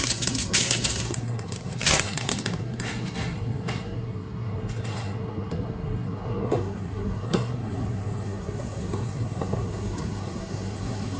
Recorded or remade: remade